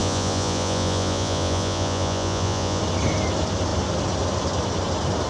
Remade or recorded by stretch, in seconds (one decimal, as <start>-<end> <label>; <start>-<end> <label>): 0.0-2.8 remade; 2.8-5.3 recorded